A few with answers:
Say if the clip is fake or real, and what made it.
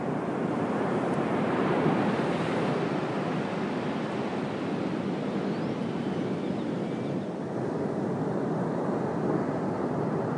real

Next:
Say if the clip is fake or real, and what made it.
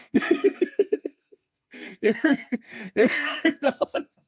fake, codec, SNAC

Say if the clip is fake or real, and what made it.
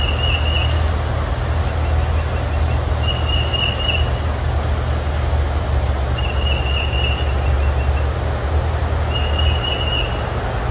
real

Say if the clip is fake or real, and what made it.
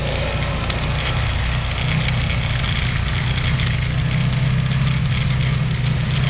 real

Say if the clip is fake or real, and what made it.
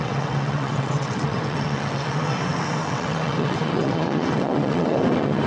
fake, vocoder, WaveNeXt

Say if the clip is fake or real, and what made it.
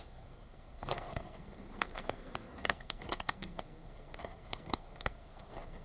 fake, codec, SNAC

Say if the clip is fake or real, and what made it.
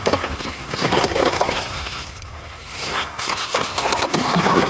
fake, codec, SNAC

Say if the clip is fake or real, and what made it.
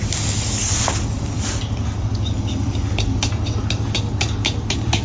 real